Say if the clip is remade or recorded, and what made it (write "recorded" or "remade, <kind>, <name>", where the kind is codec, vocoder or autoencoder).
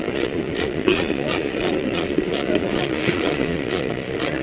remade, vocoder, Vocos